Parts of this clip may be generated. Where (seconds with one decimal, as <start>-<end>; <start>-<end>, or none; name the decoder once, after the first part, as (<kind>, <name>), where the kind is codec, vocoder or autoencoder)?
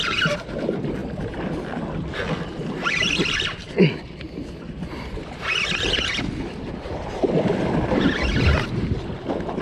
none